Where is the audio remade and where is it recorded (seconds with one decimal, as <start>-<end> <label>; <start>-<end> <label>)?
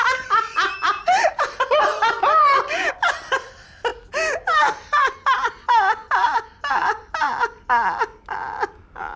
0.0-2.9 remade; 2.9-6.0 recorded; 6.0-7.3 remade; 7.3-9.2 recorded